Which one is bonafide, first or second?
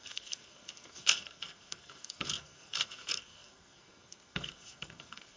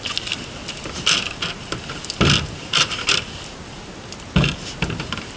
second